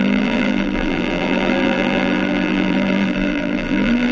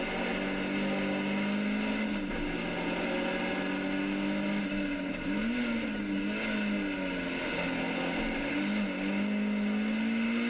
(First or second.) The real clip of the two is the second